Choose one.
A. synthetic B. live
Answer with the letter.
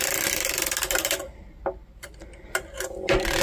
B